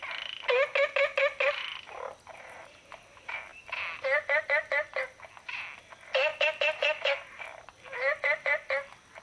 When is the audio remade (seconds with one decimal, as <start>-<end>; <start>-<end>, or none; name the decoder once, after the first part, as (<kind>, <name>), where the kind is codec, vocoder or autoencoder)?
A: none